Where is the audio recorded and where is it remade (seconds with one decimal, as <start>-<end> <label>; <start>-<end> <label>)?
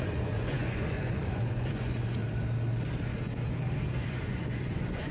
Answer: 0.0-2.2 remade; 2.2-4.0 recorded; 4.0-5.1 remade